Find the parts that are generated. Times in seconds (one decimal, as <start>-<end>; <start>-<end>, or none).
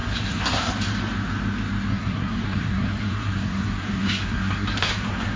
0.0-0.7; 1.9-5.4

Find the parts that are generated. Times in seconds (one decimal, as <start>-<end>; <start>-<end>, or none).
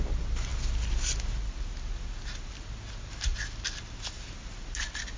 none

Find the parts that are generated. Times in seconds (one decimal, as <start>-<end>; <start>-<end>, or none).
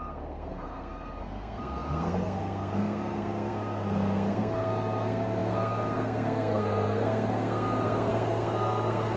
0.0-9.2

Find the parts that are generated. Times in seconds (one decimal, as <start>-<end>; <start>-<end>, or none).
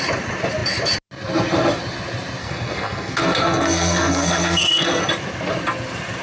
2.4-5.0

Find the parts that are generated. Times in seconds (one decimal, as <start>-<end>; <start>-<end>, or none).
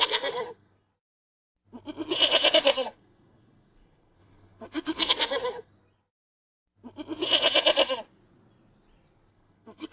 0.0-0.9; 2.5-5.7; 9.3-9.9